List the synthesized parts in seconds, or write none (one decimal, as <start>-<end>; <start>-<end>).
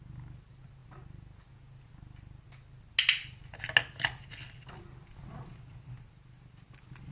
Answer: none